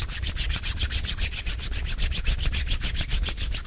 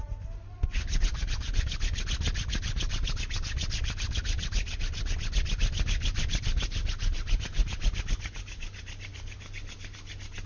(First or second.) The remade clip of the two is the first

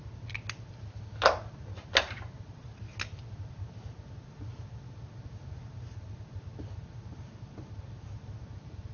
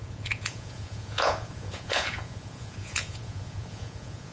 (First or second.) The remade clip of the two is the second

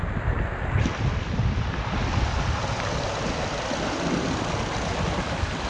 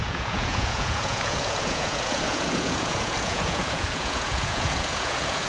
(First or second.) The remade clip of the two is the second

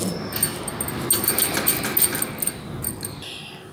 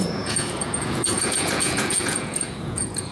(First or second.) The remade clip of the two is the second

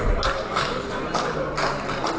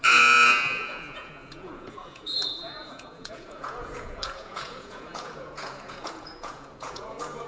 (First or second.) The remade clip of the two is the second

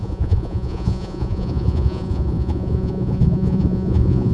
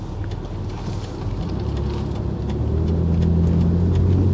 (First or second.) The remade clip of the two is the first